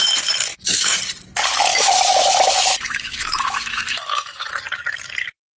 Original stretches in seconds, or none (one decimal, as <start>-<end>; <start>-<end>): 0.0-0.5; 1.0-1.7; 4.5-5.6